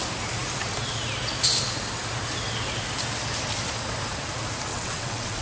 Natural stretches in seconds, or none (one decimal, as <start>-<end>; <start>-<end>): 0.0-4.7